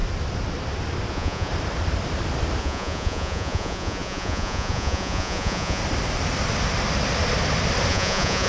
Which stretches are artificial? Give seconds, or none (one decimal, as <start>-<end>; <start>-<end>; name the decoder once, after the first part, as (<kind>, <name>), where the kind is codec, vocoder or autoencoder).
1.1-1.5 (vocoder, Vocos); 2.6-5.8; 7.9-8.5